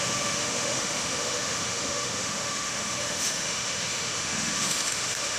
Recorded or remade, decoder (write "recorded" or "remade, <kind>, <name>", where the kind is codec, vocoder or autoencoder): remade, autoencoder, DAC-VAE